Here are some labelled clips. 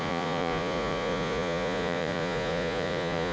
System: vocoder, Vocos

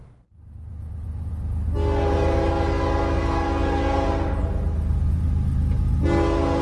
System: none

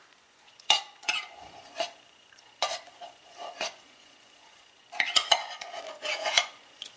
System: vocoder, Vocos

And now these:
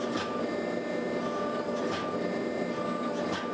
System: none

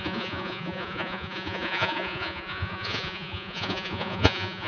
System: vocoder, Vocos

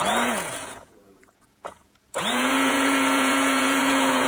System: vocoder, Vocos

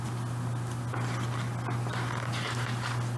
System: none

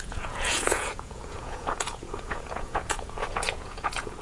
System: vocoder, Vocos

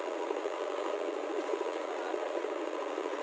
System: vocoder, Vocos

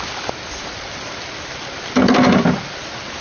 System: none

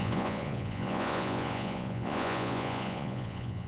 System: vocoder, Vocos